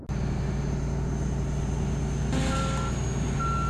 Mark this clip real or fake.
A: real